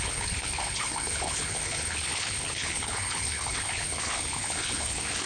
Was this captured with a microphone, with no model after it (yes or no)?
no